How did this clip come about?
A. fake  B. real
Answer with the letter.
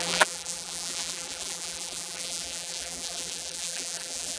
A